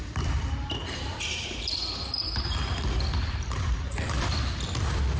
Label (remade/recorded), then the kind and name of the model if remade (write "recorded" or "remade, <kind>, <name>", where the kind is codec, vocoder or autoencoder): remade, vocoder, BigVGAN v2